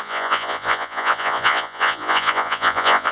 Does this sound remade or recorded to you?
remade